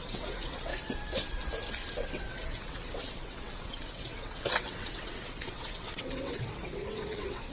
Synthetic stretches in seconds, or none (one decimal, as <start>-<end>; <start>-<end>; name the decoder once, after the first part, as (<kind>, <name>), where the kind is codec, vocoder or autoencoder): 0.0-0.7 (vocoder, WaveNeXt); 1.9-7.5